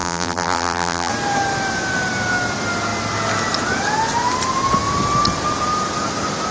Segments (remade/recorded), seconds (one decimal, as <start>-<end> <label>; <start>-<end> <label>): 0.0-1.1 remade; 1.1-6.5 recorded

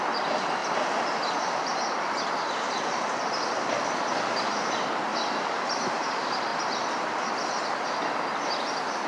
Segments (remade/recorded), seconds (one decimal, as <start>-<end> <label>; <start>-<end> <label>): 0.0-5.1 recorded; 5.1-6.1 remade; 6.1-9.1 recorded